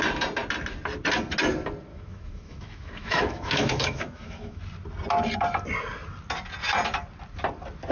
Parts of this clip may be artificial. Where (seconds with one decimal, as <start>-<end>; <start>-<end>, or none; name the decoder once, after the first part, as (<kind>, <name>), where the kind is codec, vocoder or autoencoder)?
1.9-4.6 (autoencoder, DAC-VAE)